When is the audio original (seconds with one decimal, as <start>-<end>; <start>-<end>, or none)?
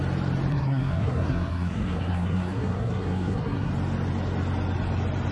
0.0-0.5; 3.7-5.3